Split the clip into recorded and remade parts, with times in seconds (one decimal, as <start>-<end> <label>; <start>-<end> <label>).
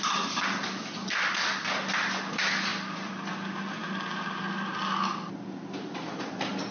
0.0-6.7 recorded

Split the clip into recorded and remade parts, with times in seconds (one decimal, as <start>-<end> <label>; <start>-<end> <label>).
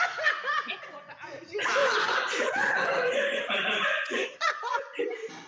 0.0-0.6 recorded; 0.6-1.1 remade; 1.1-1.8 recorded; 1.8-5.0 remade; 5.0-5.5 recorded